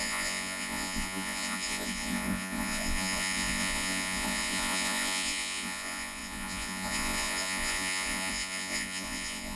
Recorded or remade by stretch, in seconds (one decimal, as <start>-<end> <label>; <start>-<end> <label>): 0.0-9.6 remade